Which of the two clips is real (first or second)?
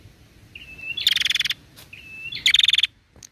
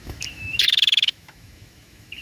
first